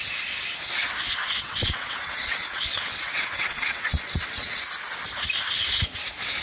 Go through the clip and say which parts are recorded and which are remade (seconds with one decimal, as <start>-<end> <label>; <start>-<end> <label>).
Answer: 0.0-1.2 recorded; 1.2-4.6 remade; 4.6-6.4 recorded